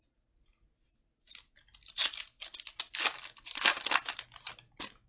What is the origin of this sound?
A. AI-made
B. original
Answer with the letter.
B